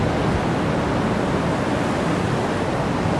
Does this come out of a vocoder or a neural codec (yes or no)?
no